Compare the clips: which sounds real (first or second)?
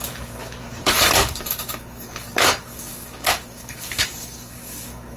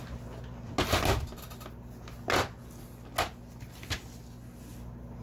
second